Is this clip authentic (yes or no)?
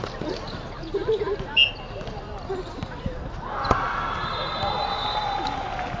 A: yes